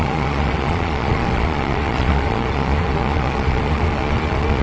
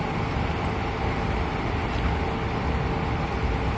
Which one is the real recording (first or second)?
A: second